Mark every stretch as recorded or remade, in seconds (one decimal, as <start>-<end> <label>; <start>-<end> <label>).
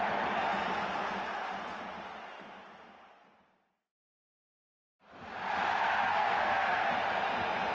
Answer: 0.0-5.8 recorded; 5.8-6.9 remade; 6.9-7.7 recorded